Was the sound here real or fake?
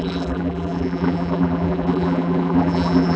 fake